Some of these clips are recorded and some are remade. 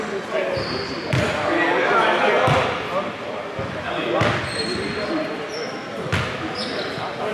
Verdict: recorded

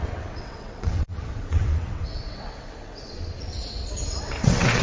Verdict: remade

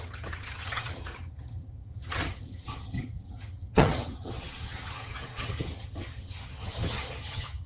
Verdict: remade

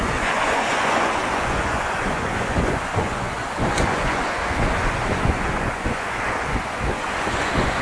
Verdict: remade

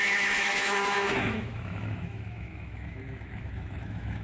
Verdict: remade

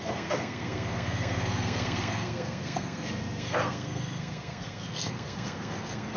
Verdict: remade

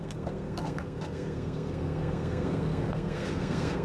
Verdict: remade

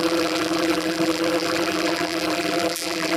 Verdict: remade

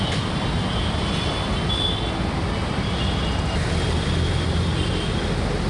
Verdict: recorded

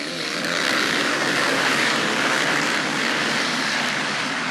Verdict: remade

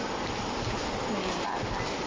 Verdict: recorded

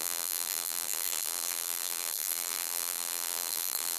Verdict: remade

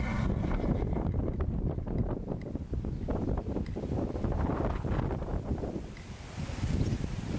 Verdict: recorded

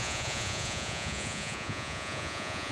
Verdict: remade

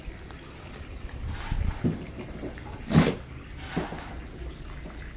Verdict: recorded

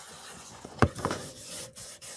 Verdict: remade